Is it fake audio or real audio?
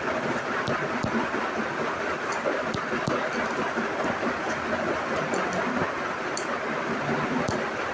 real